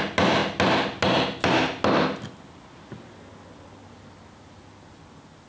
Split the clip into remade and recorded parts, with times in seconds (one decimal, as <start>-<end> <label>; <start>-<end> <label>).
0.0-5.5 recorded